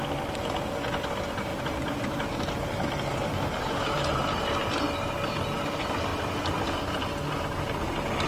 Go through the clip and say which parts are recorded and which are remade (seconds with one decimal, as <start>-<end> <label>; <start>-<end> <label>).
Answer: 0.0-1.5 recorded; 1.5-4.7 remade; 4.7-6.1 recorded; 6.1-7.3 remade; 7.3-8.3 recorded